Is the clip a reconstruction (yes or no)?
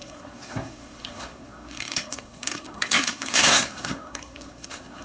yes